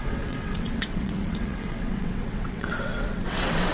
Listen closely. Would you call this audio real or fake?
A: fake